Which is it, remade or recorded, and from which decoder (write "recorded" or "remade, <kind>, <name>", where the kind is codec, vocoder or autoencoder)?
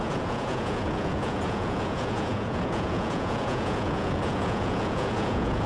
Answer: remade, vocoder, Vocos